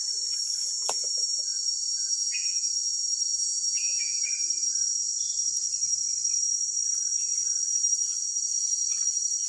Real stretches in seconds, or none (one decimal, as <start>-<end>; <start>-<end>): 0.0-0.6; 1.4-1.9; 2.7-3.3; 4.2-9.5